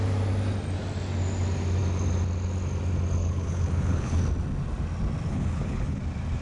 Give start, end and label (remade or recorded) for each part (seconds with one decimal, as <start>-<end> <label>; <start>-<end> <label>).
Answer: 0.0-3.2 recorded; 3.2-4.2 remade; 4.2-5.3 recorded; 5.3-6.0 remade; 6.0-6.4 recorded